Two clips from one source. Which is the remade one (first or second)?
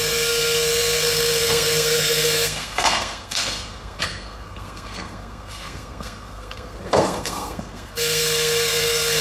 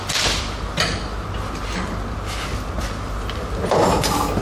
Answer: first